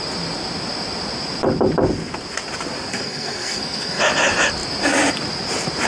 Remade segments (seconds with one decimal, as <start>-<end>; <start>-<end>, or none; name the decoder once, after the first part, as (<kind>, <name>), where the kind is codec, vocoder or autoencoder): 2.9-4.0 (codec, SNAC)